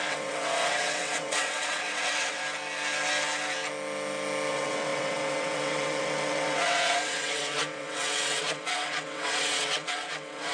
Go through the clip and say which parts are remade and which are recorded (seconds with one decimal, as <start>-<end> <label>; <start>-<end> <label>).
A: 0.0-2.4 remade; 2.4-4.5 recorded; 4.5-10.5 remade